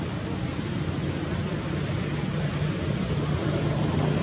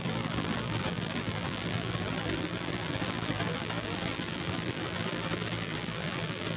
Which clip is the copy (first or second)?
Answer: second